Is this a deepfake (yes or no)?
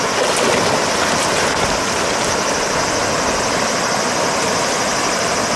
no